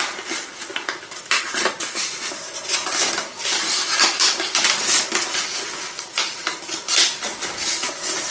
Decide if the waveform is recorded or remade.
recorded